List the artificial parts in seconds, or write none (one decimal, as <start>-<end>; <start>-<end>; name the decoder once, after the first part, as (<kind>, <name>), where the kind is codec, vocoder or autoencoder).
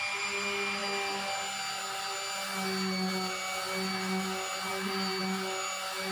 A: none